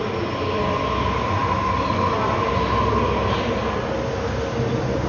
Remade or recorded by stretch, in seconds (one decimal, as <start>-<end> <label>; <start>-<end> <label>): 0.0-5.1 recorded